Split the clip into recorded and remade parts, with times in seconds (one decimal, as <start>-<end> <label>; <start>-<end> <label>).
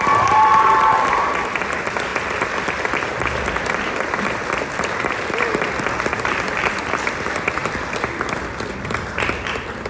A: 0.0-9.9 recorded